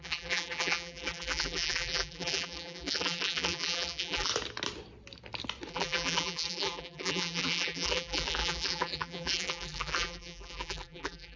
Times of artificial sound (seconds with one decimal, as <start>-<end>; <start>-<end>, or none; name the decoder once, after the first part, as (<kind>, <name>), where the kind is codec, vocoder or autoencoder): 0.0-4.3 (vocoder, BigVGAN v2); 5.7-11.4